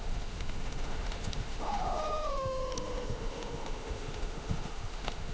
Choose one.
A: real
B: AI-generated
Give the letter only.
B